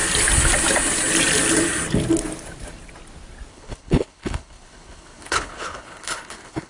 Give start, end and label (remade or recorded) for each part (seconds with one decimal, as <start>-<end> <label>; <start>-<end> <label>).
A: 0.0-3.5 recorded; 3.5-6.7 remade